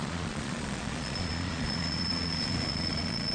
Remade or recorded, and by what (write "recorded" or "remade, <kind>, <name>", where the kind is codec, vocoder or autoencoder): remade, vocoder, Vocos